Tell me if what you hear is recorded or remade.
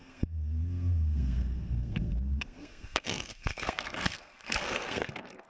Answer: remade